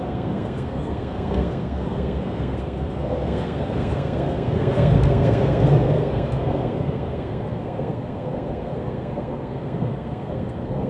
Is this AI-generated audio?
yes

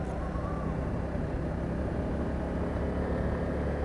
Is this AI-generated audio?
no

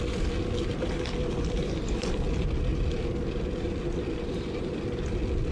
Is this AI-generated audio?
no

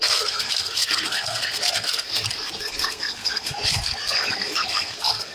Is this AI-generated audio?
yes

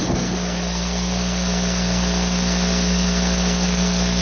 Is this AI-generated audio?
yes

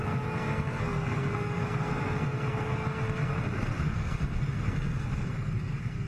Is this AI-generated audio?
yes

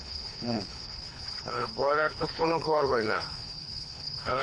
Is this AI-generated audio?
yes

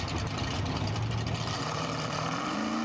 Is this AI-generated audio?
no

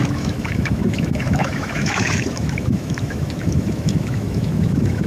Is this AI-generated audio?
yes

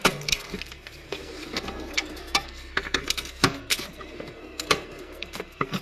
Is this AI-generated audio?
yes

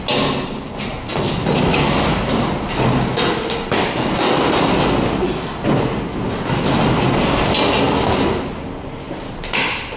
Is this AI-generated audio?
no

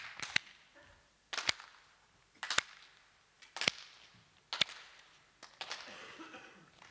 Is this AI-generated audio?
no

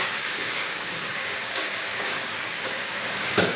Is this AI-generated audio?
yes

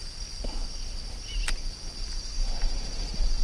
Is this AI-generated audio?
no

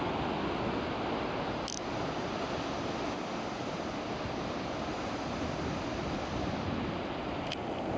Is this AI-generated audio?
no